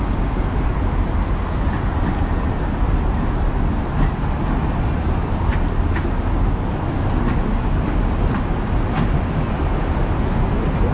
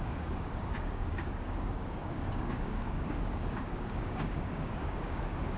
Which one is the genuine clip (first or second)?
first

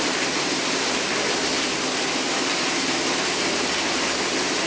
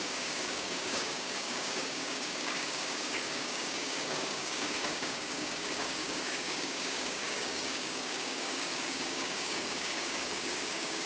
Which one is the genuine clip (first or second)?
first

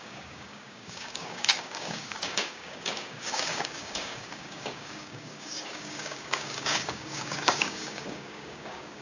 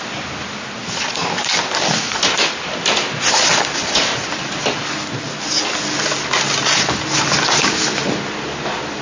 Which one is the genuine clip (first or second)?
second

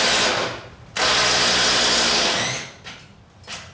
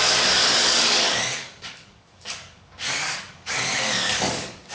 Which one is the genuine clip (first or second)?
first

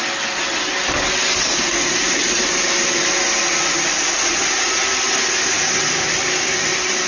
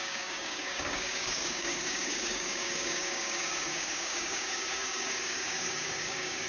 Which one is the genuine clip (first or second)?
first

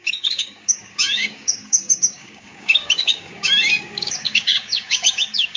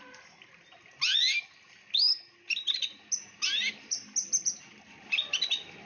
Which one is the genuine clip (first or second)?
second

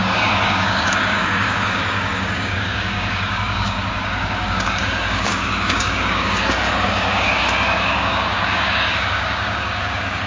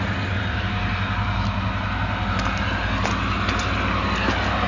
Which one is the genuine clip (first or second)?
second